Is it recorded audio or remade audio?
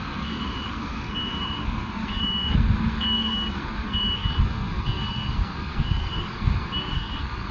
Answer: remade